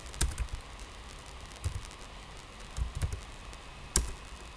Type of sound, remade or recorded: recorded